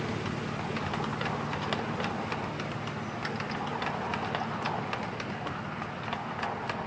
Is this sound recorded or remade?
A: recorded